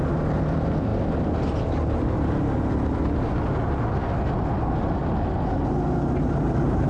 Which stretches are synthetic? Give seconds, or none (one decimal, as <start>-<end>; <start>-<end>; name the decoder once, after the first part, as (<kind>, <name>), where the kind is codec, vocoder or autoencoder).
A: 0.0-0.9 (vocoder, BigVGAN v2); 4.6-5.0; 6.3-6.9